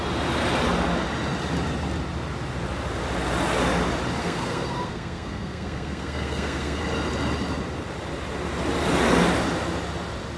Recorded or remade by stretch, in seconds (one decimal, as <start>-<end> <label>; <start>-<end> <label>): 0.0-4.2 recorded; 4.2-6.8 remade; 6.8-10.4 recorded